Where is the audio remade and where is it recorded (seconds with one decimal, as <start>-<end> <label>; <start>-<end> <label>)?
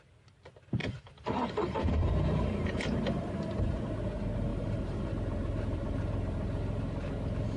0.0-0.8 recorded; 0.8-3.8 remade; 3.8-4.5 recorded; 4.5-5.1 remade; 5.1-7.6 recorded